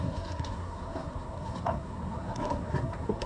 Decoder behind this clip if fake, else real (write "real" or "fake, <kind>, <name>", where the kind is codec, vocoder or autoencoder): fake, codec, SNAC